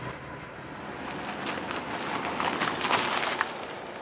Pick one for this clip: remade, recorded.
recorded